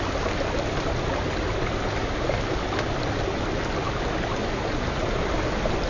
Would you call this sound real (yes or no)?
yes